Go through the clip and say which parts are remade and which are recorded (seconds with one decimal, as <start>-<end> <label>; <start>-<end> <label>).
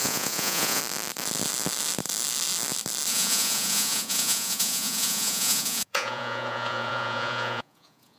0.0-0.8 remade; 0.8-3.1 recorded; 3.1-8.2 remade